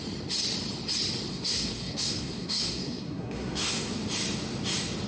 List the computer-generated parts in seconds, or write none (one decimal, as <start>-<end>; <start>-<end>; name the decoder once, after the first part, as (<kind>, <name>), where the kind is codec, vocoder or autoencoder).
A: 1.3-3.9 (codec, SNAC)